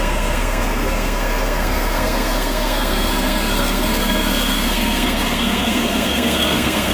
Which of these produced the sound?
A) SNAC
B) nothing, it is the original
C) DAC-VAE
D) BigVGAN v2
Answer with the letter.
A